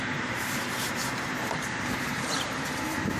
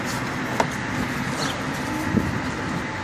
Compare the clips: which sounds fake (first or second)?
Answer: first